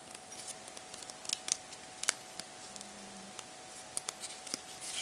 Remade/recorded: recorded